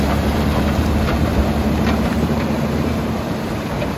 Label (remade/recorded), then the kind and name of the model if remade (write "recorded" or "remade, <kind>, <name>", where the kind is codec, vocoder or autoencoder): remade, vocoder, BigVGAN v2